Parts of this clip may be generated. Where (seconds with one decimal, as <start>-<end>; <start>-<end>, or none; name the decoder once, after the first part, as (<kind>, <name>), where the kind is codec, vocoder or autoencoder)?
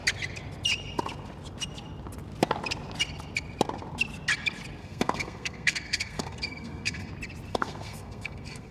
4.8-7.1 (codec, SNAC); 7.5-8.7